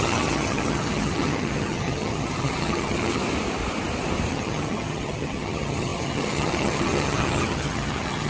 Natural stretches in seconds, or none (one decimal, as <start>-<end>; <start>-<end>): 3.2-4.3